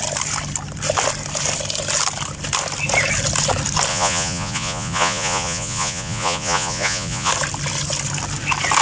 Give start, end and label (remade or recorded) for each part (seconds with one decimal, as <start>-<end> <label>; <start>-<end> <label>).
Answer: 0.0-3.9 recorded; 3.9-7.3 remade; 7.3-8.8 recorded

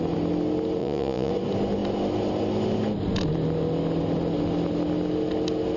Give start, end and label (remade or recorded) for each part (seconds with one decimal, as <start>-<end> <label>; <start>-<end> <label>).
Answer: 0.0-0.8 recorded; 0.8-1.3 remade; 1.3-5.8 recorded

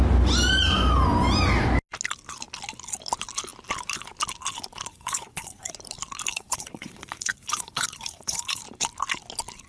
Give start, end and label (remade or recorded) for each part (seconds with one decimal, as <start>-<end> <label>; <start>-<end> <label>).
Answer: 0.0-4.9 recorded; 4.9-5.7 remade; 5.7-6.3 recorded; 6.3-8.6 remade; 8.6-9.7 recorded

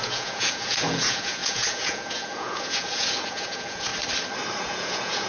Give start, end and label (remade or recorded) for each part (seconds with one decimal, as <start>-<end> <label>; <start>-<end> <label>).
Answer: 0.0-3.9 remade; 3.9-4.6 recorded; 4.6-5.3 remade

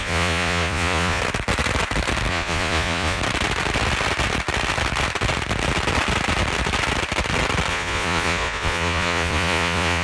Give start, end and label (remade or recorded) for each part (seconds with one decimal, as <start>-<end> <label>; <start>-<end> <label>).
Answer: 0.0-1.2 remade; 1.2-2.3 recorded; 2.3-3.2 remade; 3.2-7.7 recorded; 7.7-10.0 remade

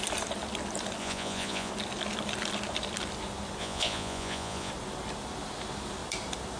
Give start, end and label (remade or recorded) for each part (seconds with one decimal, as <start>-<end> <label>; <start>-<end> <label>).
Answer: 0.0-1.0 recorded; 1.0-1.7 remade; 1.7-3.6 recorded; 3.6-4.7 remade; 4.7-6.6 recorded

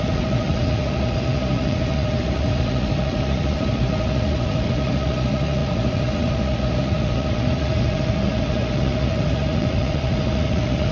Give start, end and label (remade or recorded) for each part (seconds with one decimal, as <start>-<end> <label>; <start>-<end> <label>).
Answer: 0.0-10.9 remade

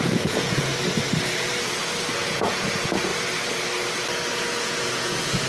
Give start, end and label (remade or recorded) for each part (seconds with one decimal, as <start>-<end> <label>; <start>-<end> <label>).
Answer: 0.0-0.7 remade; 0.7-2.1 recorded; 2.1-3.1 remade; 3.1-4.3 recorded; 4.3-5.5 remade